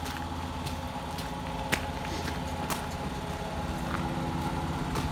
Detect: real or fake real